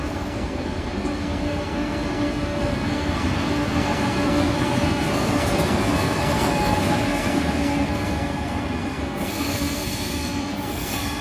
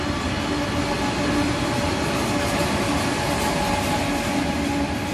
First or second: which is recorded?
second